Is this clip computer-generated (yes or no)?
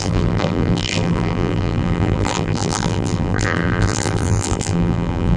yes